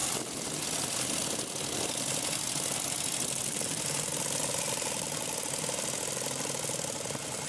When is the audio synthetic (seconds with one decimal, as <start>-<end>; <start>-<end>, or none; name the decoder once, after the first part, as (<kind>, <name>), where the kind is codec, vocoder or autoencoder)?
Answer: none